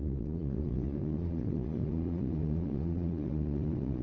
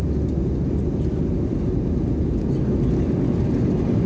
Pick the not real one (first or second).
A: first